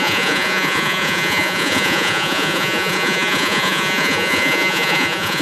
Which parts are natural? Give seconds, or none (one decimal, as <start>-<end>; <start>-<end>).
none